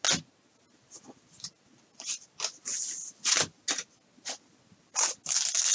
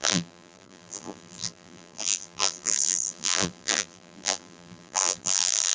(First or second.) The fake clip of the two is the second